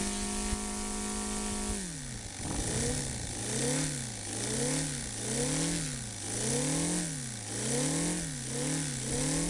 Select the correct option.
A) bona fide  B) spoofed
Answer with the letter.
A